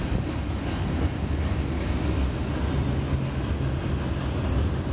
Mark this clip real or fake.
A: real